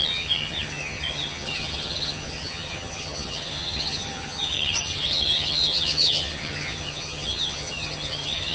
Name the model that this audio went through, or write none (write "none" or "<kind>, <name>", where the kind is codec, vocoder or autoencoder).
vocoder, HiFi-GAN